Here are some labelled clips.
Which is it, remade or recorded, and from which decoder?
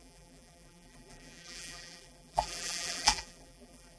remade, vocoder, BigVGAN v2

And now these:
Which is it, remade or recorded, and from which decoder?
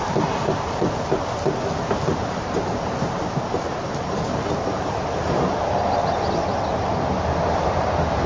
recorded